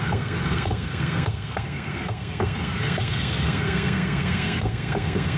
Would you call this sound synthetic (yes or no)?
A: yes